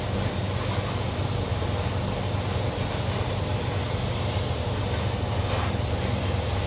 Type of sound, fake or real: real